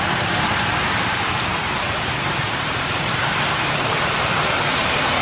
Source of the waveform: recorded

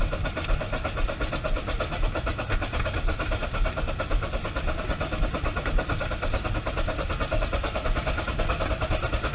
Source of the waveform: recorded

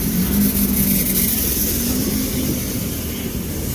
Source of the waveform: recorded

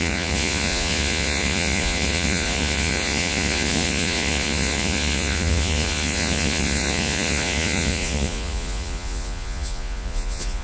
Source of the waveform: remade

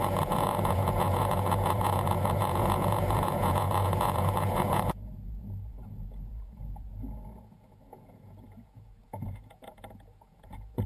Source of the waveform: remade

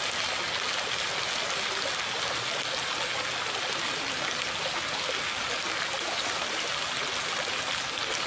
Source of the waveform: recorded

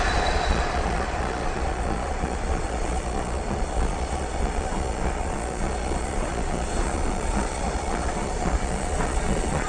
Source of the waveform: remade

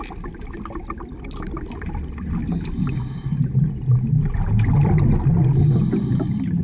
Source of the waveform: recorded